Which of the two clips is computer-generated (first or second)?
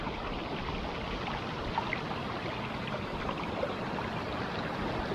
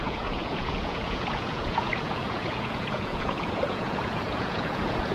second